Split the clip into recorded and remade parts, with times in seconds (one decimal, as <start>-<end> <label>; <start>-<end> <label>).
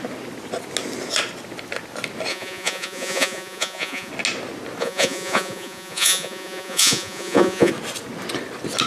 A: 0.0-2.3 recorded; 2.3-4.1 remade; 4.1-4.8 recorded; 4.8-7.7 remade; 7.7-8.9 recorded